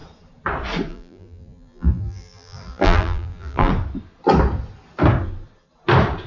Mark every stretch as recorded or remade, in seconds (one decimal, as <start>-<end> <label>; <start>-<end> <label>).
0.0-0.9 recorded; 0.9-3.7 remade; 3.7-6.3 recorded